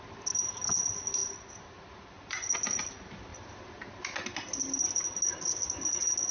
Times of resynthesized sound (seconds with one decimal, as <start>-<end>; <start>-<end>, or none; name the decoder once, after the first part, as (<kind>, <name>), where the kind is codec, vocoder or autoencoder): none